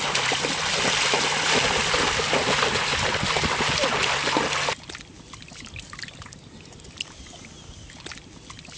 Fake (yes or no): no